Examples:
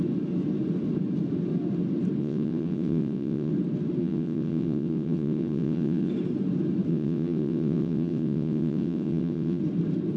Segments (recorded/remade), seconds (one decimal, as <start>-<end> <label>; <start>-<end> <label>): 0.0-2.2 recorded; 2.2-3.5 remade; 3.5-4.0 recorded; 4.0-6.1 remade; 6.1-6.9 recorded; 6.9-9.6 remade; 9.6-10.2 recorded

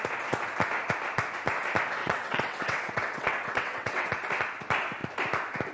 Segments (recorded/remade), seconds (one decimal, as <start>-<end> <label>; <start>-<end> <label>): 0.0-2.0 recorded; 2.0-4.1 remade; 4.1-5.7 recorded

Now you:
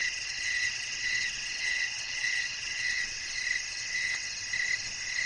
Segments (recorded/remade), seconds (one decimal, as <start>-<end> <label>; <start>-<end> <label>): 0.0-3.2 remade; 3.2-3.7 recorded; 3.7-4.3 remade; 4.3-5.3 recorded

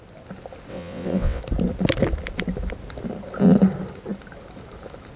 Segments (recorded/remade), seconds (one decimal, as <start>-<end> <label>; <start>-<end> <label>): 0.0-0.7 recorded; 0.7-1.4 remade; 1.4-5.2 recorded

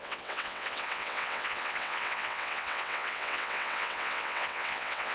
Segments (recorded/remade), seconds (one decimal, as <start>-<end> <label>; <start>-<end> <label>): 0.0-5.1 remade

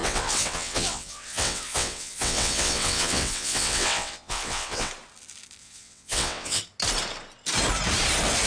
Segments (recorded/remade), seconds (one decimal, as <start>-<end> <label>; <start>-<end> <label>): 0.0-4.9 remade; 4.9-5.6 recorded; 5.6-6.6 remade; 6.6-8.5 recorded